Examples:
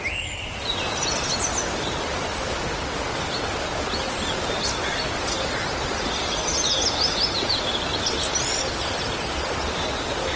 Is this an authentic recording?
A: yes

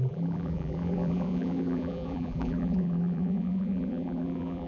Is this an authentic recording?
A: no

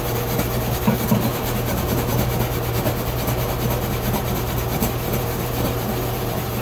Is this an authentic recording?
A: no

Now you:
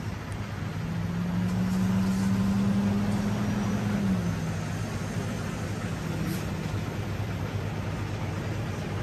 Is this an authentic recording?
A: yes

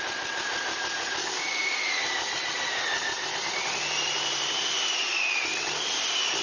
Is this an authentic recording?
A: yes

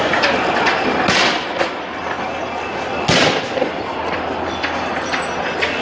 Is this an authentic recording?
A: yes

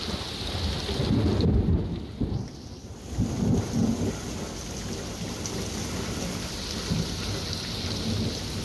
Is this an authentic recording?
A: yes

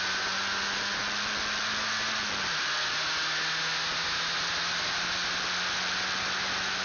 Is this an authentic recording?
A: yes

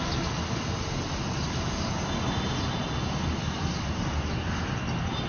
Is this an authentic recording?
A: yes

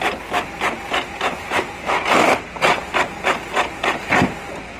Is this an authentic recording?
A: yes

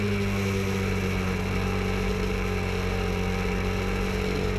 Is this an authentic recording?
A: yes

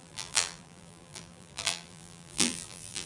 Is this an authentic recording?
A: no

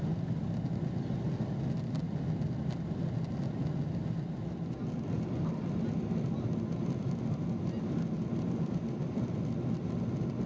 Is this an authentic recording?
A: yes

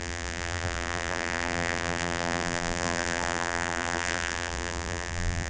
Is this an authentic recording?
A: no